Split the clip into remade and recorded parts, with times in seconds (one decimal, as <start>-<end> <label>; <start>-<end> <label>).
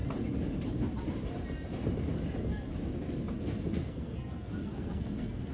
0.0-3.3 recorded; 3.3-5.5 remade